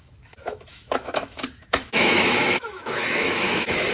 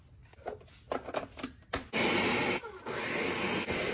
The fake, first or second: first